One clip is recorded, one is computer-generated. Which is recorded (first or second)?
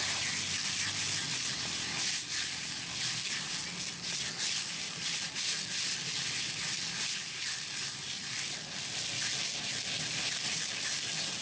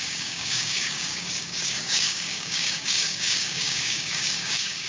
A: first